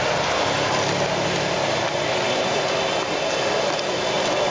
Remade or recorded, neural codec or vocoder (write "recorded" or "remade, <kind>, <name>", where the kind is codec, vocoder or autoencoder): recorded